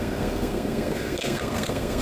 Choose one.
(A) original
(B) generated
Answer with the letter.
B